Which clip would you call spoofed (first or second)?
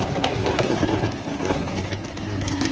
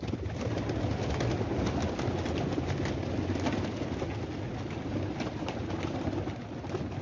first